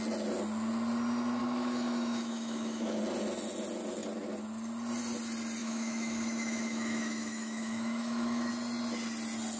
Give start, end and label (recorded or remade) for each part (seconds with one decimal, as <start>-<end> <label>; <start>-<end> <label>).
0.0-1.4 recorded; 1.4-3.0 remade; 3.0-5.6 recorded; 5.6-8.5 remade; 8.5-9.6 recorded